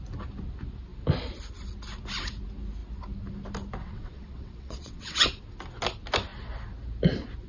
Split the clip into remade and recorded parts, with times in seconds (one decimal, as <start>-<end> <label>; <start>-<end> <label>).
0.0-3.8 recorded; 3.8-5.3 remade; 5.3-7.5 recorded